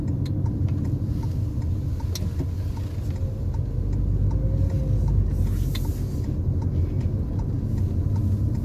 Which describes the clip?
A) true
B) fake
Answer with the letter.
A